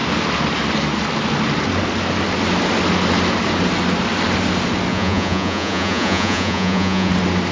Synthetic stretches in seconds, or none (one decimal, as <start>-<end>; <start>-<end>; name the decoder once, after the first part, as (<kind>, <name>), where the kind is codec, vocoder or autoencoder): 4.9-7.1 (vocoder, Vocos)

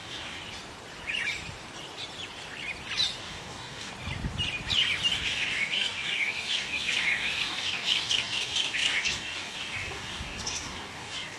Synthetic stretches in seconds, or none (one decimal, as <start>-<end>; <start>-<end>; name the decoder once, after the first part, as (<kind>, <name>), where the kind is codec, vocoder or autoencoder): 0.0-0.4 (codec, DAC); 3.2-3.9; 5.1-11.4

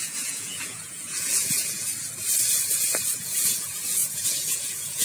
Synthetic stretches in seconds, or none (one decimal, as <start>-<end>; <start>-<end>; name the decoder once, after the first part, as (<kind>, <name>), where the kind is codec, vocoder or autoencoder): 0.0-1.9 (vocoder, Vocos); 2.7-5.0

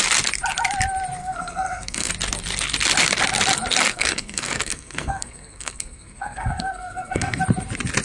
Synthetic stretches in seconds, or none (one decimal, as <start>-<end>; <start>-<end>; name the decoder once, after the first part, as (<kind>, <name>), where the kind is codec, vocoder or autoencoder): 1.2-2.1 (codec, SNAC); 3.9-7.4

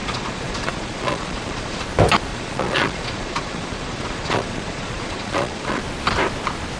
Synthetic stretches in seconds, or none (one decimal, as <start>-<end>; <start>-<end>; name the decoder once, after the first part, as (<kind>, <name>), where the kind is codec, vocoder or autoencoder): 0.0-1.8 (vocoder, Vocos); 2.3-5.8

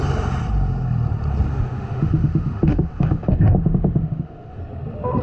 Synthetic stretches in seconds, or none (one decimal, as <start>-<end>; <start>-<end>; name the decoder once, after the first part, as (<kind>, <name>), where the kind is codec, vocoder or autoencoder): 1.5-4.6 (autoencoder, DAC-VAE)

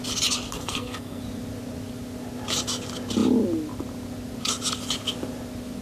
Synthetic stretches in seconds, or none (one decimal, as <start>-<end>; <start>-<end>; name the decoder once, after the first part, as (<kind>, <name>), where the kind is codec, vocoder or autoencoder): 0.5-1.2 (codec, SNAC)